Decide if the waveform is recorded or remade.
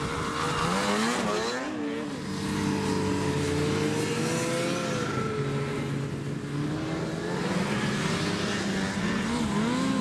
recorded